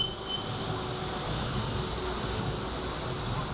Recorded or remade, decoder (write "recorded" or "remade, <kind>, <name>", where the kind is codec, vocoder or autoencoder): recorded